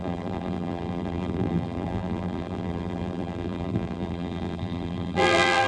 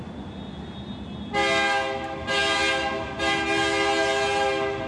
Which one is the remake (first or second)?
first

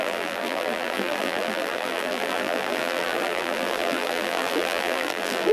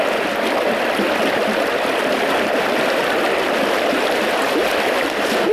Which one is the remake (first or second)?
first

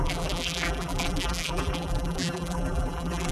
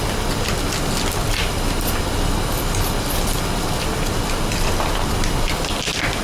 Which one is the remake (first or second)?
first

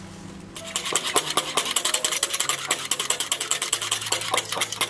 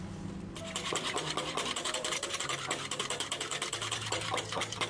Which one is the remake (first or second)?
second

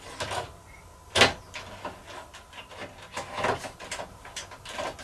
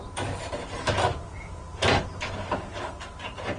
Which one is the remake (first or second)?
second